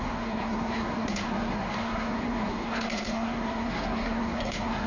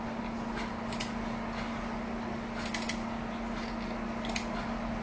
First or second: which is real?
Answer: second